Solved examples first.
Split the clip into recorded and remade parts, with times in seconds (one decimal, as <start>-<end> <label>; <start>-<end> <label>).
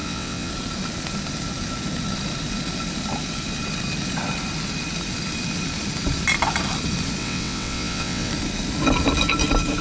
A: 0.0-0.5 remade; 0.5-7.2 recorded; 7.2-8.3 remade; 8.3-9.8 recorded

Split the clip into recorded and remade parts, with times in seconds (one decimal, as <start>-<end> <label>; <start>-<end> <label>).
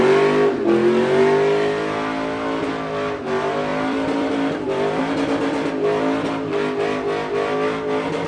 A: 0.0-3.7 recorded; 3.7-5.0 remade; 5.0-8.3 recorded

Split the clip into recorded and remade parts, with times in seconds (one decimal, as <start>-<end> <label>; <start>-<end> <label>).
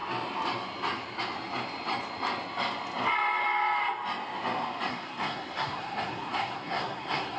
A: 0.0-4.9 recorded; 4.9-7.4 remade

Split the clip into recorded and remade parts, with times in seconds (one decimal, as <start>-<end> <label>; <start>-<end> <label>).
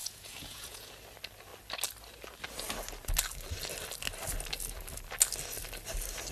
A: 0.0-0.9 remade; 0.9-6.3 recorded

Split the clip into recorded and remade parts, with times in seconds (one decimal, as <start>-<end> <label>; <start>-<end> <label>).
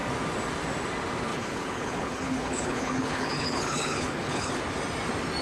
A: 0.0-1.3 recorded; 1.3-4.5 remade; 4.5-5.4 recorded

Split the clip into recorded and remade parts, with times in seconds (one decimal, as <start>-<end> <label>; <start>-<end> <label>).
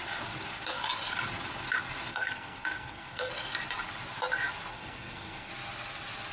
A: 0.0-2.1 recorded; 2.1-3.3 remade; 3.3-4.7 recorded; 4.7-5.5 remade; 5.5-6.3 recorded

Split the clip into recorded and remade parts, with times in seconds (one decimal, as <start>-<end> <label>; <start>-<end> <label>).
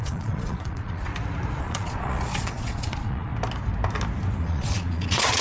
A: 0.0-1.1 remade; 1.1-1.6 recorded; 1.6-3.3 remade; 3.3-4.4 recorded; 4.4-5.4 remade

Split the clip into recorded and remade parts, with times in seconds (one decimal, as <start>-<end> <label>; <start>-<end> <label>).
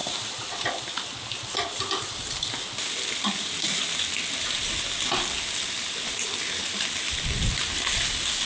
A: 0.0-8.5 recorded